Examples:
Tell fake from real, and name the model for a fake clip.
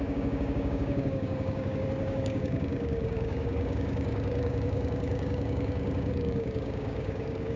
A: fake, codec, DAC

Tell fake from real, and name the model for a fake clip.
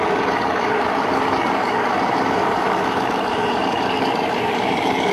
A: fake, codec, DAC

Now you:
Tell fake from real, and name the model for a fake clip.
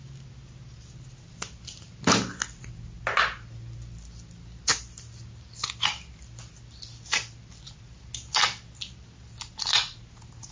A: real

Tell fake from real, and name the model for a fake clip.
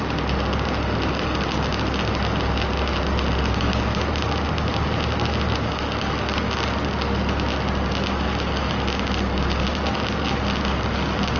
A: real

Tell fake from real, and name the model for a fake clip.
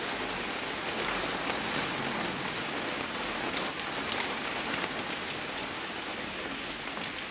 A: real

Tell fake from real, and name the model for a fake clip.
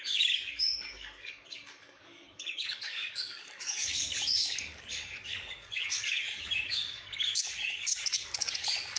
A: fake, codec, DAC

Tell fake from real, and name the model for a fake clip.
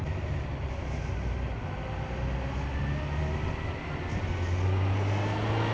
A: real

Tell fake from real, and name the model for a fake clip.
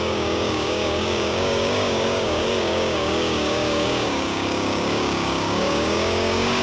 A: fake, codec, DAC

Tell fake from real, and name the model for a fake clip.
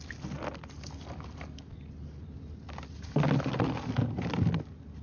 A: real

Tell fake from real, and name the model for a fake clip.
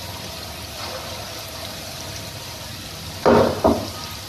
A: real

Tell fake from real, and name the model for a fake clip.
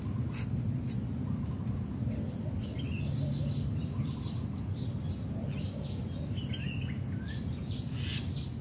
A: real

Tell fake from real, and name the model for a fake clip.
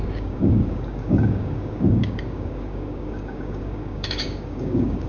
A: fake, codec, DAC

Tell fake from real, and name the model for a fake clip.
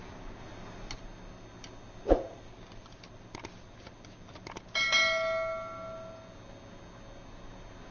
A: real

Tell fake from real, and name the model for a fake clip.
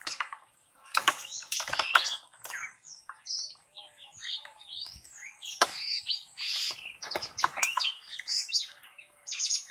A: fake, codec, DAC